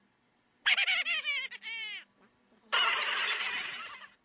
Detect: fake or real real